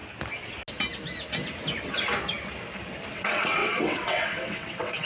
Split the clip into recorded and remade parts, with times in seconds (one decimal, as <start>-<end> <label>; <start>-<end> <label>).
0.0-3.1 recorded; 3.1-5.1 remade